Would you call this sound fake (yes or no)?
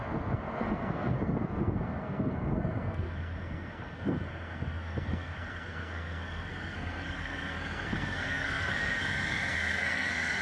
yes